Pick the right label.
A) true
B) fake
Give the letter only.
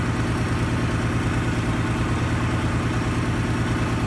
A